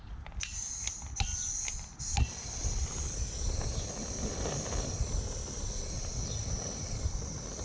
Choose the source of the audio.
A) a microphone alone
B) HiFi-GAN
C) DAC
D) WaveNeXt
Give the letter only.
A